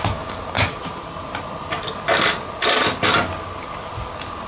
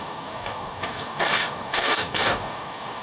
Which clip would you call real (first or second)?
first